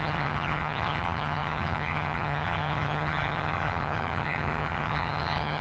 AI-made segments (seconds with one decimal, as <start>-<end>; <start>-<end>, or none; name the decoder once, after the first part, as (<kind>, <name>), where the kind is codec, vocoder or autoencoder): 0.0-5.6 (vocoder, HiFi-GAN)